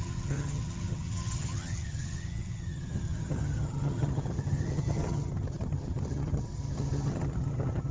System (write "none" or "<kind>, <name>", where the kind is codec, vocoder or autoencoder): vocoder, HiFi-GAN